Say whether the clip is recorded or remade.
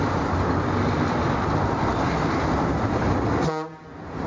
recorded